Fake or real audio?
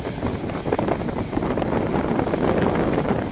real